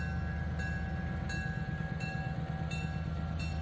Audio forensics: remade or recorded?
recorded